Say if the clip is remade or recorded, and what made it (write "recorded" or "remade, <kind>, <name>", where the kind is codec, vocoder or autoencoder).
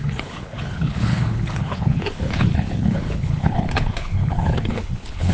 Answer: remade, codec, HILCodec